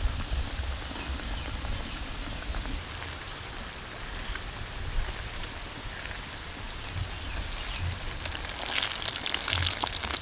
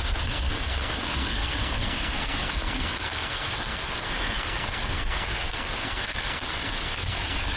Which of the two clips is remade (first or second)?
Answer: second